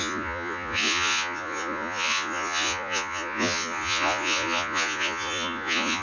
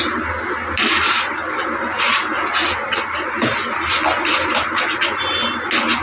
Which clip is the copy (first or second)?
first